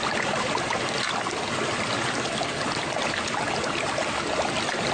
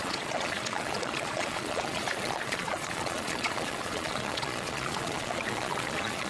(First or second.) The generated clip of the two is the second